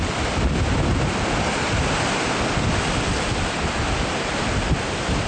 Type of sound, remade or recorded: recorded